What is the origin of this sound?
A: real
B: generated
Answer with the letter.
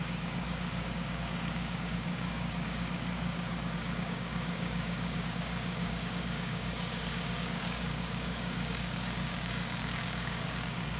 B